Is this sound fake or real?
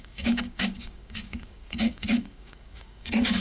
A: fake